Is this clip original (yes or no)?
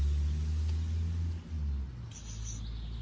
yes